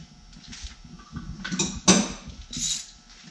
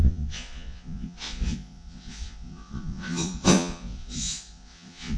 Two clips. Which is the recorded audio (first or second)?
first